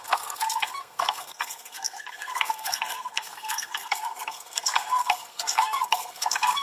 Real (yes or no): no